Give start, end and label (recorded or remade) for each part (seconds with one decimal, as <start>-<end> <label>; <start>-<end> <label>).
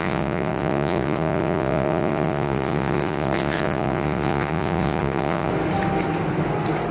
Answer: 0.0-5.5 remade; 5.5-6.9 recorded